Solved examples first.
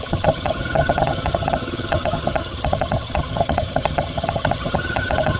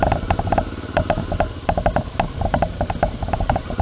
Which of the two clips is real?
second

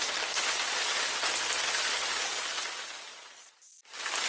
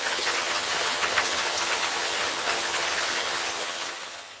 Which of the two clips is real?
first